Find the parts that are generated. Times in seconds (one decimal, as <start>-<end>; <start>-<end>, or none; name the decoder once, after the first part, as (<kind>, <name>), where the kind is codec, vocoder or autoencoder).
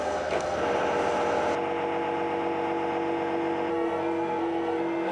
0.0-0.6 (codec, SNAC); 3.7-5.1